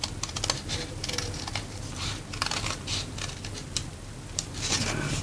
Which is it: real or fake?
real